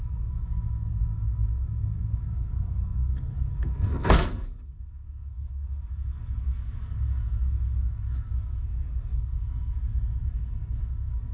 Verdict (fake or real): fake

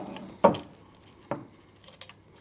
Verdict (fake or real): real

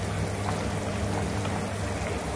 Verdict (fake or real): real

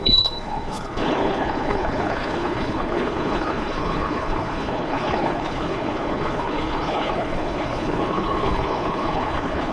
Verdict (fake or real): fake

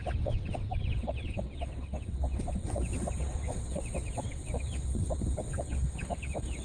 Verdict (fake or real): fake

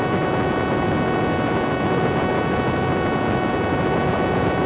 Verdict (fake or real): real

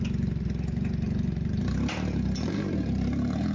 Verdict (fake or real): fake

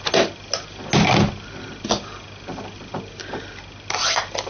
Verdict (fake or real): real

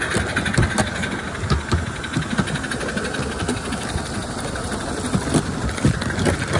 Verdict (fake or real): real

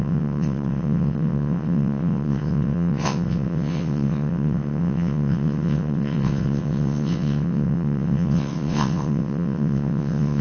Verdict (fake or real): fake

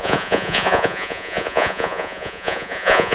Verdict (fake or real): fake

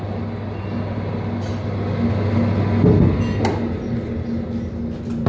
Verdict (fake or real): real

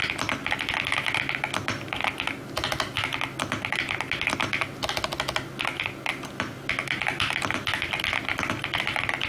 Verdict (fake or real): real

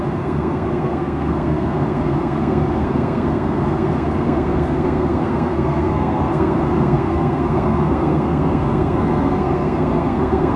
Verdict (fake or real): fake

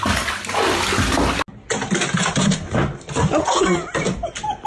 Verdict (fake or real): real